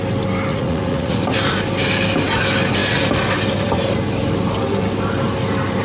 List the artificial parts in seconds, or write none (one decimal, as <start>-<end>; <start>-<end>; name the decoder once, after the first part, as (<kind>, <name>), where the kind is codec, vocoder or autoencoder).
0.5-1.2 (vocoder, Vocos)